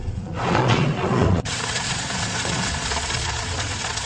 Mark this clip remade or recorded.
remade